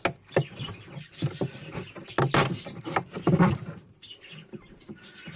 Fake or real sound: real